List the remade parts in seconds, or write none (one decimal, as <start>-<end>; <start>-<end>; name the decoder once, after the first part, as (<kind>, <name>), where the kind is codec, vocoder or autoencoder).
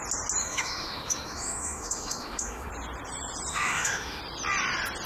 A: 0.4-2.7 (autoencoder, DAC-VAE); 3.5-4.2